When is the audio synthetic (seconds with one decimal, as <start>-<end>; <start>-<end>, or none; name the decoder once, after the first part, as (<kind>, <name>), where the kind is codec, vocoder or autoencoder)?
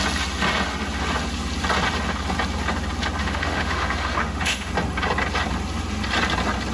3.2-4.7 (autoencoder, DAC-VAE)